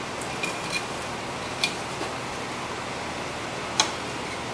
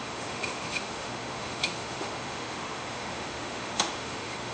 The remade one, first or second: second